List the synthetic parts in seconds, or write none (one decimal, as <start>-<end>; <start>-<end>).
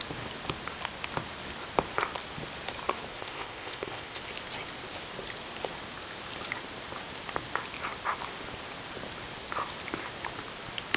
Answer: 3.1-4.2